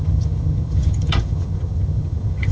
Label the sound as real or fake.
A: fake